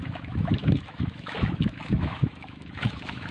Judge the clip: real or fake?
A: fake